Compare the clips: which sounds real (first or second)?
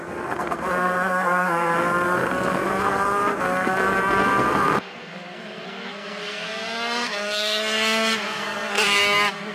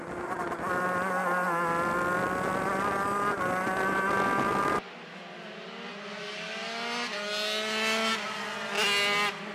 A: second